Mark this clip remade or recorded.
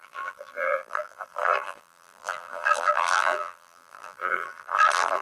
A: remade